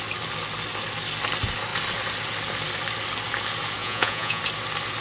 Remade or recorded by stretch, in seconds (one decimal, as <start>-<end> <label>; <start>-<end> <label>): 0.0-3.8 recorded; 3.8-4.4 remade; 4.4-5.0 recorded